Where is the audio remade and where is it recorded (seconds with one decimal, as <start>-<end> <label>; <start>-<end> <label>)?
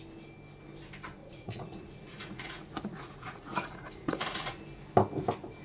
0.0-1.2 recorded; 1.2-4.6 remade; 4.6-5.6 recorded